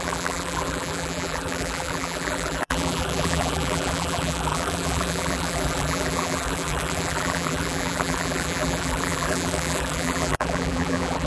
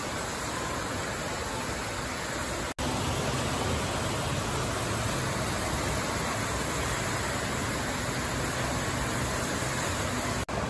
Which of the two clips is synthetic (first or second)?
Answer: first